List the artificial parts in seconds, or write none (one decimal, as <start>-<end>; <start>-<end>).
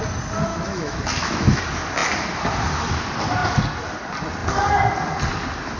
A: 0.5-1.6